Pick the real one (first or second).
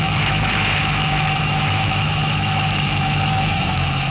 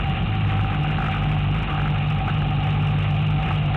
second